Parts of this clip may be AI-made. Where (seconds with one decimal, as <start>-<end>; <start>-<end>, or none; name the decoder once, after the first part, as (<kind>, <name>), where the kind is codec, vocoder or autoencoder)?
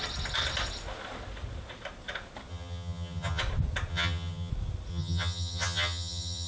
2.5-3.4 (vocoder, HiFi-GAN); 3.9-4.5; 4.9-6.5